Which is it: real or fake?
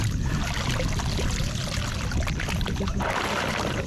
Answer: real